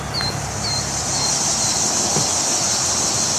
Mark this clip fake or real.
real